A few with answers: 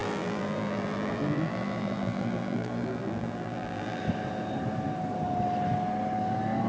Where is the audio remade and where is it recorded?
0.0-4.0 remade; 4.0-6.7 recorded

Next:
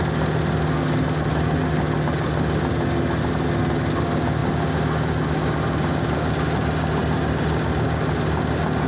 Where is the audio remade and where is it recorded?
0.0-8.9 recorded

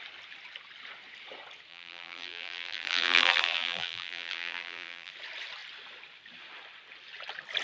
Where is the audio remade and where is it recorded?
0.0-1.7 recorded; 1.7-5.1 remade; 5.1-7.6 recorded

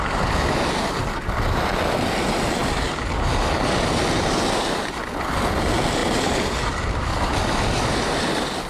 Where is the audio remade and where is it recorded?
0.0-8.7 recorded